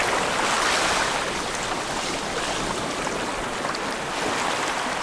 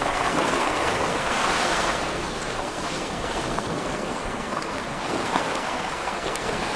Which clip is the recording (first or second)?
first